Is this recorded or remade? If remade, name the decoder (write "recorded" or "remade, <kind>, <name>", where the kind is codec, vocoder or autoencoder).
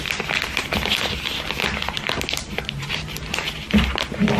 recorded